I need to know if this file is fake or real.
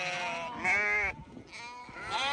real